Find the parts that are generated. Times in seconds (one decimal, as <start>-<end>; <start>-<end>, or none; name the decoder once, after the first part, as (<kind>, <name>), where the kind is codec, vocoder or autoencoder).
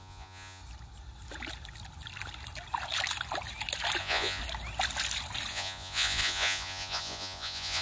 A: 0.0-0.6 (vocoder, Vocos); 4.0-4.4; 5.5-7.8